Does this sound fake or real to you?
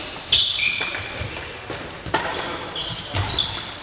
real